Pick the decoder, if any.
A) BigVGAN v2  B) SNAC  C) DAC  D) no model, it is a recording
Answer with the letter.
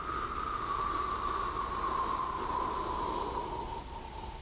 D